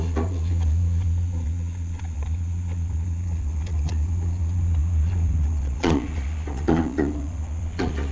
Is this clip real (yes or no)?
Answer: no